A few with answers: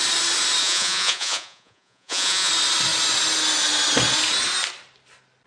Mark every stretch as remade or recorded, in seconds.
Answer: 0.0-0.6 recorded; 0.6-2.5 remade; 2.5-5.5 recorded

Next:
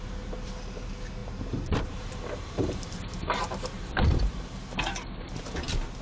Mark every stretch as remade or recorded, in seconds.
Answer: 0.0-1.2 recorded; 1.2-4.8 remade; 4.8-6.0 recorded

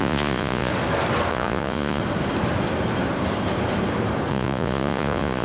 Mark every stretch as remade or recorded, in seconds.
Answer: 0.0-0.7 remade; 0.7-1.3 recorded; 1.3-2.0 remade; 2.0-4.3 recorded; 4.3-5.4 remade